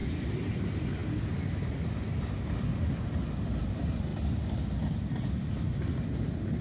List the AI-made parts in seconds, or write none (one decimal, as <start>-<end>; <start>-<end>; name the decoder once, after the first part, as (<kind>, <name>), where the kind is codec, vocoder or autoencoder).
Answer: 4.1-5.8 (vocoder, BigVGAN v2)